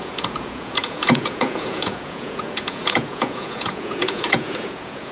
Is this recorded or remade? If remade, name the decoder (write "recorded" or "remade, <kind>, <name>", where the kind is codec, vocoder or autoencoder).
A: remade, vocoder, Vocos